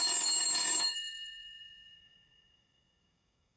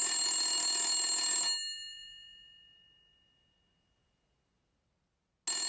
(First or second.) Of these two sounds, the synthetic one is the first